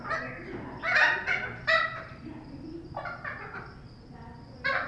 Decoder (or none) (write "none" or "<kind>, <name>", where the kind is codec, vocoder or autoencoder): none